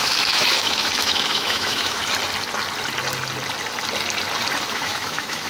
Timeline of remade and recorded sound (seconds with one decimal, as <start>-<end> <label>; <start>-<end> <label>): 0.0-2.0 remade; 2.0-4.7 recorded; 4.7-5.5 remade